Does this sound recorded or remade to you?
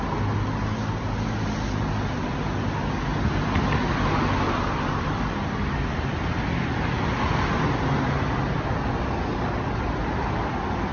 recorded